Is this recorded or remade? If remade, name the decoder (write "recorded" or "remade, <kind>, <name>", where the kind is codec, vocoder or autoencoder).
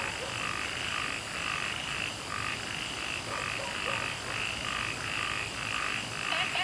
recorded